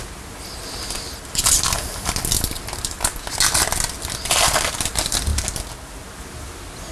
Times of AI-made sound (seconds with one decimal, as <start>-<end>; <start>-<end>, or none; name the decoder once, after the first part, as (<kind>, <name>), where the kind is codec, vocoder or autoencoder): none